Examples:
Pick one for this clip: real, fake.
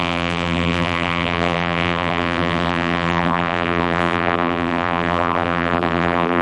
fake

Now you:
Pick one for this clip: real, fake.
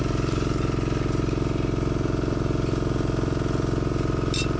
fake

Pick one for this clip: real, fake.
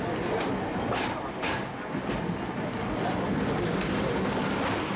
real